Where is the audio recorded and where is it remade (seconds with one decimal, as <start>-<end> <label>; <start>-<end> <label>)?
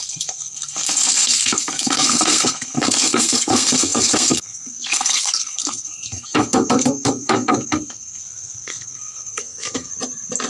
0.0-9.9 remade; 9.9-10.5 recorded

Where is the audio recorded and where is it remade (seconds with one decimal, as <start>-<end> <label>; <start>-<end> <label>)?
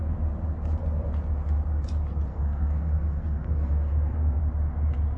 0.0-2.3 recorded; 2.3-4.4 remade; 4.4-5.2 recorded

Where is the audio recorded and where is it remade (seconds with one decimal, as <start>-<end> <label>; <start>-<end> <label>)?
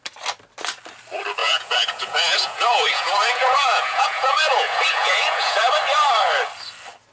0.0-1.4 recorded; 1.4-5.7 remade; 5.7-7.1 recorded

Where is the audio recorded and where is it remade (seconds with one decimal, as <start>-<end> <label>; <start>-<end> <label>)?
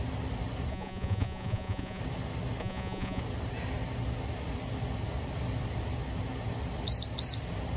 0.0-0.7 recorded; 0.7-2.0 remade; 2.0-2.6 recorded; 2.6-3.2 remade; 3.2-7.8 recorded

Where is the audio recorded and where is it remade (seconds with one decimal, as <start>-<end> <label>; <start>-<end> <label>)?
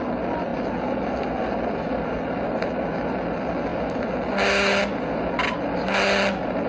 0.0-6.7 recorded